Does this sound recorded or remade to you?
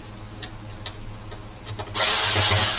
recorded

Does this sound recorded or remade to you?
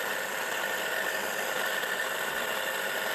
recorded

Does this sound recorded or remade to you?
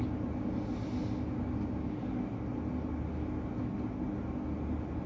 recorded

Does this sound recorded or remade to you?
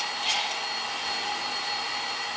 recorded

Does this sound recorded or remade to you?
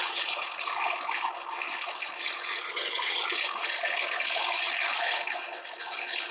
recorded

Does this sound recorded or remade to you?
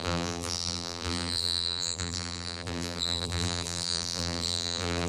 remade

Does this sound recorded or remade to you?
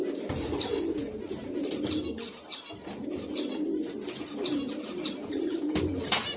recorded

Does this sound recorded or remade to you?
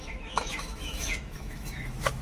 remade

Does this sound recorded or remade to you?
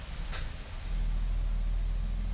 recorded